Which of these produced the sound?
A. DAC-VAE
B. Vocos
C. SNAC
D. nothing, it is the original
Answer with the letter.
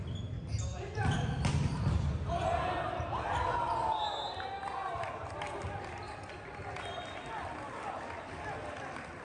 D